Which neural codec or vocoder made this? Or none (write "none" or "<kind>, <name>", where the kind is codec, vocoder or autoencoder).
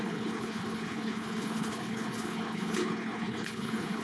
codec, HILCodec